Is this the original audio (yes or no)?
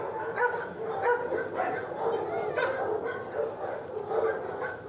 yes